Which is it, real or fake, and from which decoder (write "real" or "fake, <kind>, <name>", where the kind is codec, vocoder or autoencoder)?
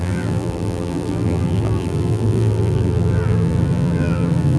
fake, vocoder, BigVGAN v2